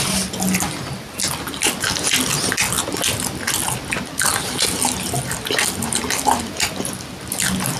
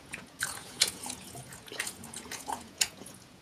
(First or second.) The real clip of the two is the first